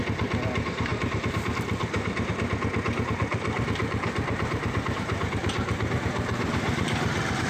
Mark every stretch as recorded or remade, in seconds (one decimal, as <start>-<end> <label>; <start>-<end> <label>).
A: 0.0-0.9 recorded; 0.9-2.3 remade; 2.3-3.3 recorded; 3.3-7.5 remade